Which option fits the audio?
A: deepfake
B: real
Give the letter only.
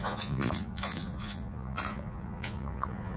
A